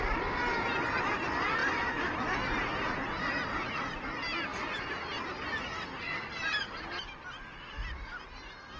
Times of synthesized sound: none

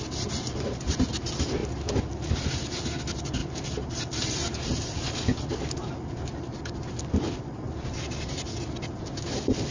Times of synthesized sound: none

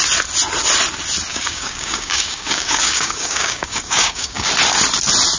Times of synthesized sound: 1.3-4.5 (codec, DAC)

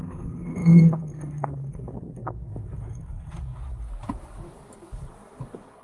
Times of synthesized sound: 0.0-3.7 (codec, DAC); 4.9-5.8

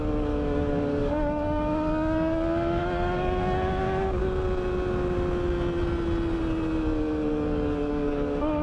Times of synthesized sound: 0.0-4.2 (codec, DAC); 7.3-8.6